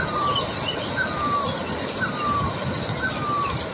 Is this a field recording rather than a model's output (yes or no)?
yes